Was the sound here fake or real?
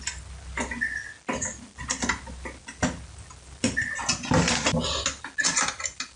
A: real